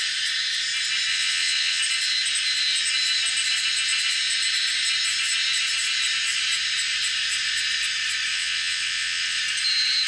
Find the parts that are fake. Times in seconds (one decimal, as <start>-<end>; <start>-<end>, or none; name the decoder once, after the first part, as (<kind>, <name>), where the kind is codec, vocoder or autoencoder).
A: 1.1-1.8 (vocoder, WaveNeXt); 8.3-9.4